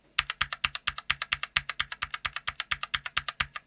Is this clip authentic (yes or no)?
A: yes